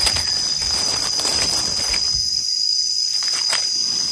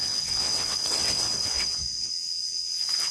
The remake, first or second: second